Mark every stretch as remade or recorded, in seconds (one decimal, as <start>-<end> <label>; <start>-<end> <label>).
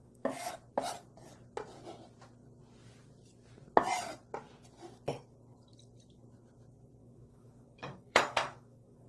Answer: 0.0-0.5 remade; 0.5-7.0 recorded; 7.0-9.1 remade